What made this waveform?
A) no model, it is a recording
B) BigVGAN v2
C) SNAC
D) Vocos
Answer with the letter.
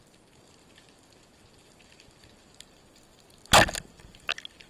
A